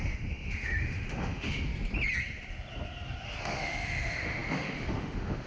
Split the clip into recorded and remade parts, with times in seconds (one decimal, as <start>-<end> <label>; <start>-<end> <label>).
0.0-1.7 remade; 1.7-3.4 recorded; 3.4-5.5 remade

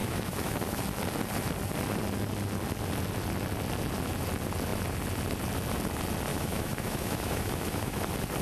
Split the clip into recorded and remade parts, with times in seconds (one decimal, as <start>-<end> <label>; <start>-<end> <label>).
0.0-0.8 remade; 0.8-6.3 recorded; 6.3-8.0 remade; 8.0-8.4 recorded

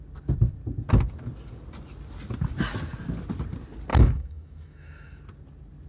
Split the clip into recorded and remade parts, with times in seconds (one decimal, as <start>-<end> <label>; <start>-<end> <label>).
0.0-3.9 recorded; 3.9-5.2 remade; 5.2-5.9 recorded